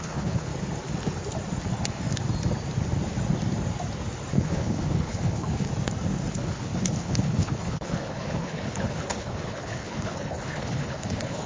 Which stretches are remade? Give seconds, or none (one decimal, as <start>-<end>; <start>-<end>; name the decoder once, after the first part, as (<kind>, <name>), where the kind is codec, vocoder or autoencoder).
0.0-0.5 (codec, HILCodec); 4.3-5.7; 6.3-11.5